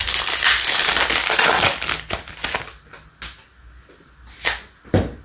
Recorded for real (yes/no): yes